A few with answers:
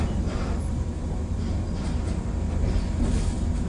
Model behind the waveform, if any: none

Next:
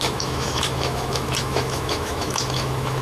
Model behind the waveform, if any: autoencoder, DAC-VAE